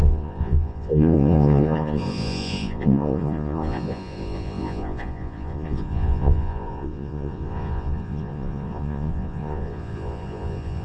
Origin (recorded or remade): remade